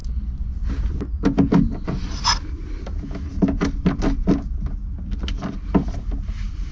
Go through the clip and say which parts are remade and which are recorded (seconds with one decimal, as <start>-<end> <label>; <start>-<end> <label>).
0.0-6.7 recorded